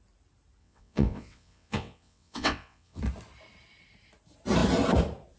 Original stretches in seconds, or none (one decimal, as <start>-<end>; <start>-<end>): 0.0-0.6; 3.0-5.4

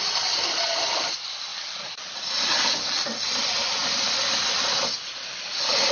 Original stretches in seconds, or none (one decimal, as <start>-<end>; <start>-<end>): 0.0-5.9